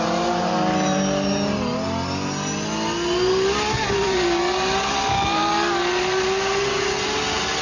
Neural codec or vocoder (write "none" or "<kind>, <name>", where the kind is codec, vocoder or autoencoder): none